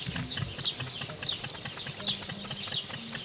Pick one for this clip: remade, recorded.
recorded